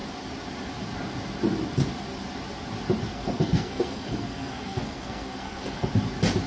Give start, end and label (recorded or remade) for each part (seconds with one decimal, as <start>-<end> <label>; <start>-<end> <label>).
0.0-3.1 recorded; 3.1-5.9 remade; 5.9-6.5 recorded